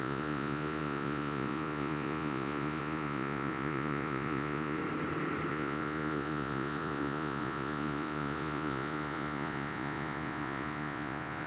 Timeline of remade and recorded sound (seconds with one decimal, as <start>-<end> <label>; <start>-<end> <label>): 0.0-4.8 remade; 4.8-5.5 recorded; 5.5-11.5 remade